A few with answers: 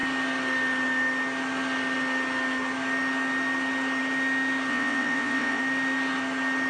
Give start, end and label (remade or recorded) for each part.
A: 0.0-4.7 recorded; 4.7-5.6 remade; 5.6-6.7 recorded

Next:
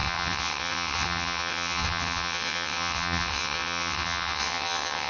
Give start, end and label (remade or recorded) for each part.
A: 0.0-5.1 remade

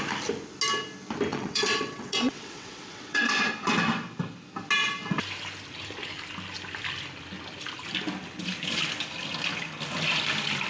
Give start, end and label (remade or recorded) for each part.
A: 0.0-1.3 recorded; 1.3-3.4 remade; 3.4-10.7 recorded

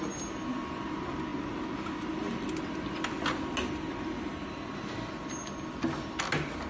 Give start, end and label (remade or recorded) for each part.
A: 0.0-6.7 recorded

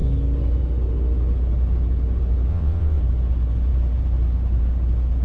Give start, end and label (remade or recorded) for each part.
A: 0.0-2.5 recorded; 2.5-3.0 remade; 3.0-5.2 recorded

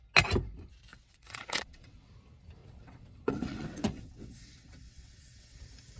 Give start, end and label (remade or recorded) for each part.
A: 0.0-0.9 recorded; 0.9-2.1 remade; 2.1-2.6 recorded; 2.6-5.6 remade; 5.6-6.0 recorded